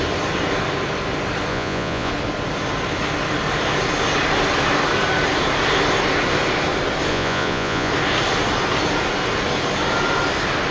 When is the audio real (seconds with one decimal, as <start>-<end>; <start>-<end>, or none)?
0.0-1.5; 2.1-7.1; 7.9-10.7